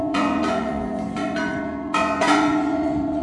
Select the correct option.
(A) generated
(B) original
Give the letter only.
A